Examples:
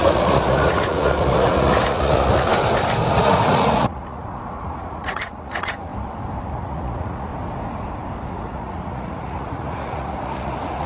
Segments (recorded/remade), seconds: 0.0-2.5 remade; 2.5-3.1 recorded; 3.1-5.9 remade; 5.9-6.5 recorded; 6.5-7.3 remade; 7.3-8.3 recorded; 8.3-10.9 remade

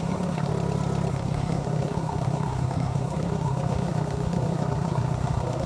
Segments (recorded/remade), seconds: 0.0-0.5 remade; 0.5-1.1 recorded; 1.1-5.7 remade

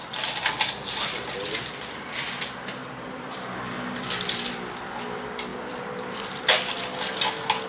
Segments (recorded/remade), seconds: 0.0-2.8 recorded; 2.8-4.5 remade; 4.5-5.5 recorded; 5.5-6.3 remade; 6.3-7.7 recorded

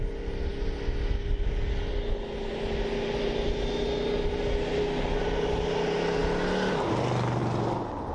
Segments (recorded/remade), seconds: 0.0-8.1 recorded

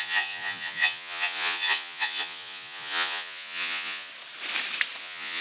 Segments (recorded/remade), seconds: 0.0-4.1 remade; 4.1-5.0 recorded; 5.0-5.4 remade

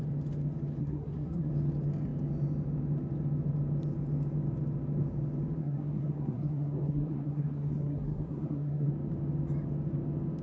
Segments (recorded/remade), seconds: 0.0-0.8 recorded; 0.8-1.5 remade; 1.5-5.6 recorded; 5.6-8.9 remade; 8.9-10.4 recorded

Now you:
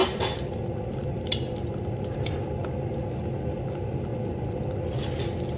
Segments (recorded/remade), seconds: 0.0-5.6 recorded